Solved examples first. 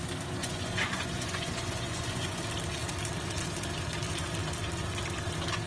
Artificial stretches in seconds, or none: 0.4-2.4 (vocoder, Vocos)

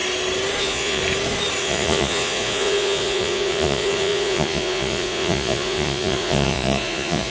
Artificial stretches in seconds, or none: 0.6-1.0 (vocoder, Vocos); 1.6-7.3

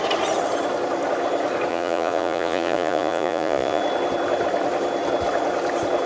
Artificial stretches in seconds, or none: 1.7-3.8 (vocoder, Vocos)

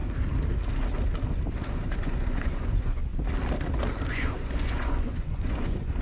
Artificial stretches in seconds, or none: 1.7-3.1 (vocoder, Vocos); 4.1-6.0

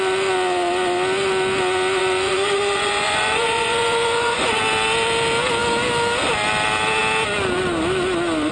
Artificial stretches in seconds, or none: 2.0-4.6 (vocoder, Vocos)

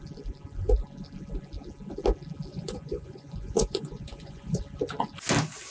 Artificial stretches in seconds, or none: 2.5-4.6 (vocoder, Vocos)

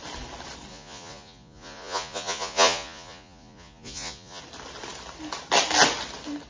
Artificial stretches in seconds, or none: 0.7-4.4 (vocoder, Vocos)